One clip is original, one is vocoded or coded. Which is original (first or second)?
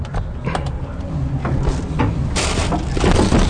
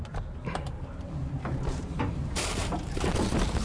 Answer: first